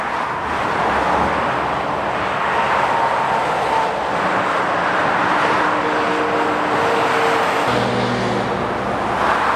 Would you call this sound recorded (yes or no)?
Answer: yes